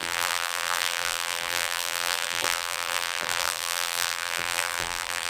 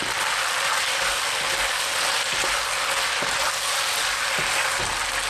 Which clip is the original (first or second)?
second